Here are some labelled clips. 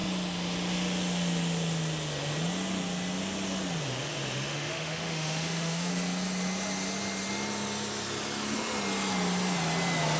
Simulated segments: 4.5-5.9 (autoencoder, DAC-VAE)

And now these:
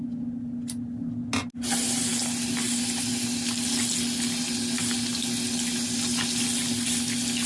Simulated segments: none